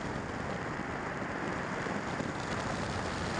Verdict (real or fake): real